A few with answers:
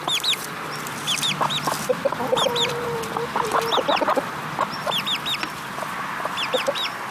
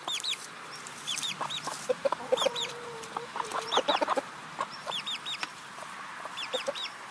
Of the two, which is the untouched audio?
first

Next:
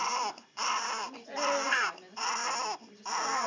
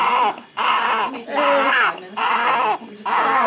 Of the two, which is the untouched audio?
second